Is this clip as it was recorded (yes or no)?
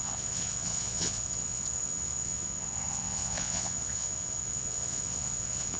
no